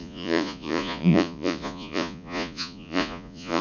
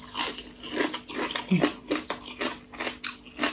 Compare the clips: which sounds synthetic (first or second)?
first